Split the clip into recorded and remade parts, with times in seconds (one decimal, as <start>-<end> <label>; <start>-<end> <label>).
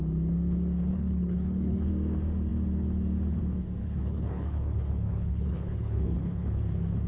0.0-0.9 recorded; 0.9-1.9 remade; 1.9-3.8 recorded; 3.8-6.6 remade; 6.6-7.1 recorded